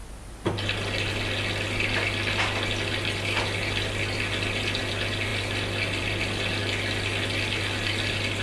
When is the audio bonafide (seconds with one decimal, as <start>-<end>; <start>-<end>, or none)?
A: 0.0-8.4